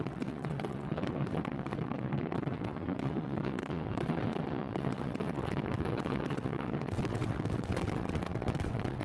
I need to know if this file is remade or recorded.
remade